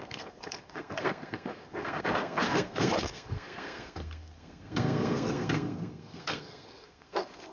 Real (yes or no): no